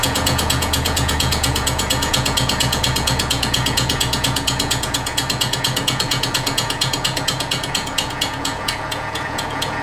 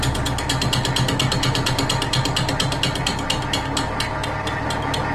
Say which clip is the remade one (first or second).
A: first